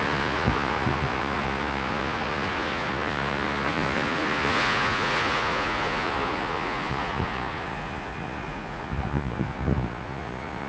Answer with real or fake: fake